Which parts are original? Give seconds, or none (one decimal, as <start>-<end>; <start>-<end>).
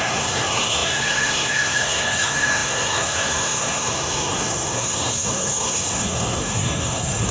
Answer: none